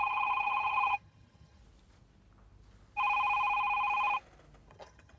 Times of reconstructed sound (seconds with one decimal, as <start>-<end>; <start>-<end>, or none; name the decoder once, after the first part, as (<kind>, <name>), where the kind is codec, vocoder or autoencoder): 0.0-1.6 (vocoder, HiFi-GAN); 4.7-5.2